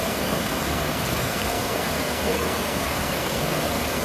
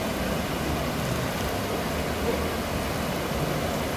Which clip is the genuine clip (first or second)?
second